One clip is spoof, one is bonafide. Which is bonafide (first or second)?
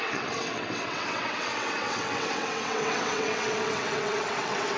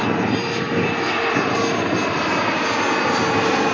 second